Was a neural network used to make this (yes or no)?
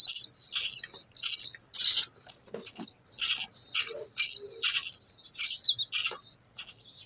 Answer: no